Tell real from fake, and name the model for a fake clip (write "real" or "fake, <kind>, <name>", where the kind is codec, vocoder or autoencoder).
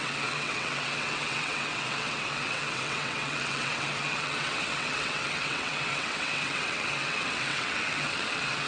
fake, vocoder, WaveNeXt